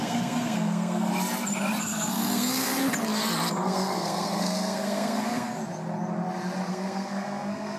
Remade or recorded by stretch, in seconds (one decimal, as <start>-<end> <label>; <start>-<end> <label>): 0.0-1.1 remade; 1.1-1.8 recorded; 1.8-2.7 remade; 2.7-3.5 recorded; 3.5-5.5 remade; 5.5-6.7 recorded; 6.7-7.8 remade